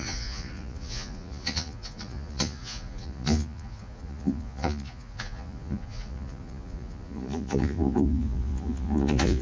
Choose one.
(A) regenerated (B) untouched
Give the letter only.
A